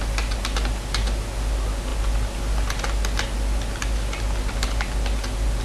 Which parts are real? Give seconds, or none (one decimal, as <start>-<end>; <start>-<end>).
0.0-5.6